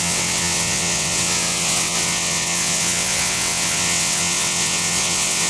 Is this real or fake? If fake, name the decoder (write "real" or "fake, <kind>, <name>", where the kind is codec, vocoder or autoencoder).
fake, vocoder, WaveNeXt